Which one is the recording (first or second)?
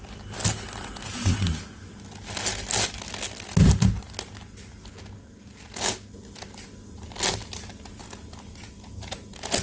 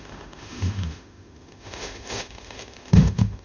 first